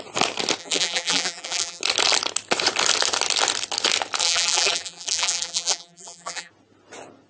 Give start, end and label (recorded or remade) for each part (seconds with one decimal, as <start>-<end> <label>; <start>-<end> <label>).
0.0-0.6 recorded; 0.6-1.8 remade; 1.8-4.2 recorded; 4.2-6.5 remade; 6.5-7.3 recorded